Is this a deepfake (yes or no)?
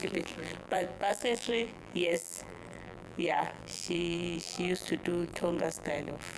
yes